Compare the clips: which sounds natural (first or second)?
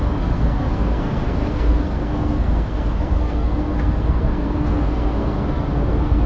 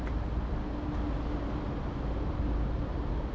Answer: second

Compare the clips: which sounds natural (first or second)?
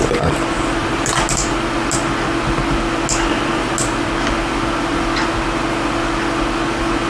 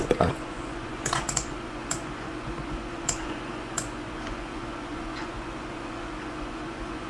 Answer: first